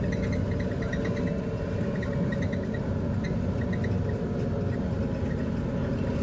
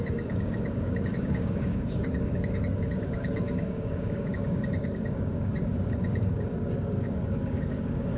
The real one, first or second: first